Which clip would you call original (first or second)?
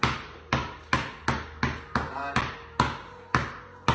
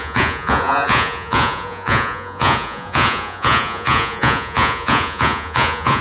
first